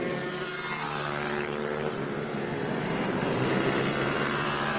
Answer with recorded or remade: remade